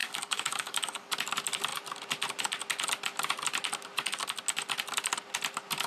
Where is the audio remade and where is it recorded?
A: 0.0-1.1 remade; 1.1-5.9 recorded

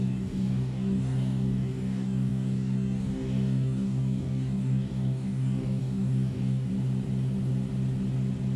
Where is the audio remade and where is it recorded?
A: 0.0-6.7 remade; 6.7-8.6 recorded

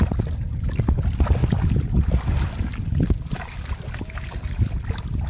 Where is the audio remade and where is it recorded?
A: 0.0-5.3 recorded

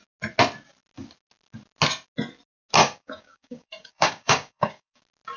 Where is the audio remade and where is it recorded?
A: 0.0-2.8 recorded; 2.8-5.0 remade; 5.0-5.4 recorded

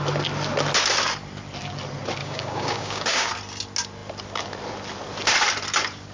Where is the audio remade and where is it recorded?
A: 0.0-2.2 recorded; 2.2-3.3 remade; 3.3-6.1 recorded

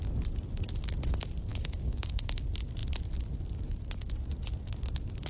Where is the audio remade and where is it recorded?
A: 0.0-1.5 recorded; 1.5-2.4 remade; 2.4-5.3 recorded

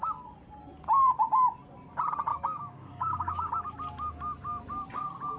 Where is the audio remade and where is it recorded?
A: 0.0-2.3 recorded; 2.3-3.5 remade; 3.5-5.4 recorded

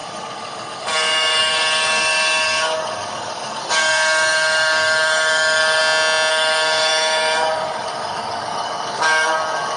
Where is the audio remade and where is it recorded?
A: 0.0-5.8 remade; 5.8-6.3 recorded; 6.3-9.8 remade